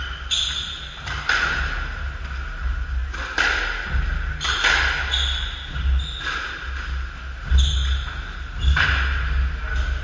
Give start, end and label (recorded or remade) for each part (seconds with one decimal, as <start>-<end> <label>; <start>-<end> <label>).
0.0-10.0 recorded